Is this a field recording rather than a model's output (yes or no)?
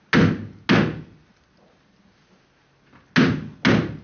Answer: yes